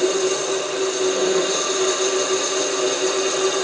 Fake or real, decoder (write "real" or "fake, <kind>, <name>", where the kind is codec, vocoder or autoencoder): real